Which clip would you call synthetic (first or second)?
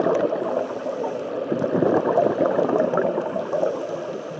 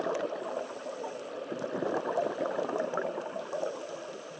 second